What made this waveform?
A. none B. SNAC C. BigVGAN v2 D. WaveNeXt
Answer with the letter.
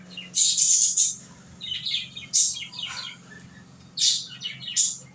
A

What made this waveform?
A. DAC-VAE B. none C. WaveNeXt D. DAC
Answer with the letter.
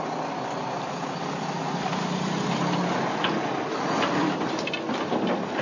B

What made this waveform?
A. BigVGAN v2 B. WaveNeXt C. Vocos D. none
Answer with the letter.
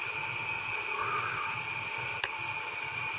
D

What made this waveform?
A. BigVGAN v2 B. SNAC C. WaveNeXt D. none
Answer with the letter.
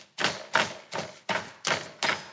D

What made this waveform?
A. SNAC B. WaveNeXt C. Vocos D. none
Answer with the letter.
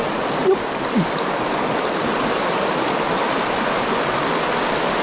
D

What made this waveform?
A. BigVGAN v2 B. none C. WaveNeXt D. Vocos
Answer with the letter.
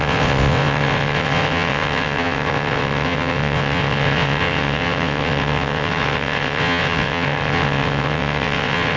C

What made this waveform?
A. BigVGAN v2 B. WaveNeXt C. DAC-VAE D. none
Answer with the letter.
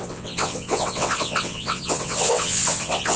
B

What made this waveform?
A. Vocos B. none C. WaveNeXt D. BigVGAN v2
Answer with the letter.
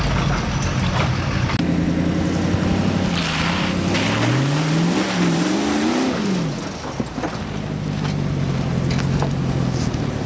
B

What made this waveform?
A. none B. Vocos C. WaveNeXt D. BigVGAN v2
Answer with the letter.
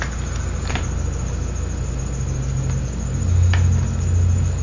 A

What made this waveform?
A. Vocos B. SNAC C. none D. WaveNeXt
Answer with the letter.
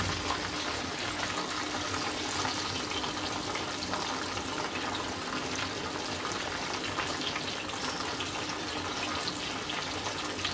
C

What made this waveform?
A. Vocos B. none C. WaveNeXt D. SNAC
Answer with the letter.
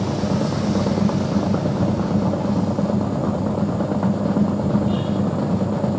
B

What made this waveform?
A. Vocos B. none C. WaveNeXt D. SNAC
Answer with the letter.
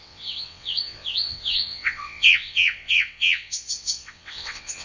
C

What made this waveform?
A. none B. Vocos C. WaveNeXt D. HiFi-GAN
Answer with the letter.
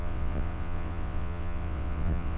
C